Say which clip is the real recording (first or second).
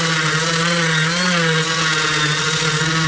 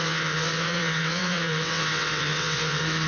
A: first